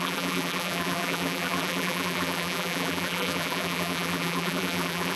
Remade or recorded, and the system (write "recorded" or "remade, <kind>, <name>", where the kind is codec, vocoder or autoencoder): remade, vocoder, BigVGAN v2